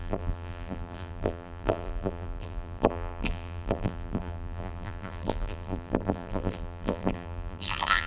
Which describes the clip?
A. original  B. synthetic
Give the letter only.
B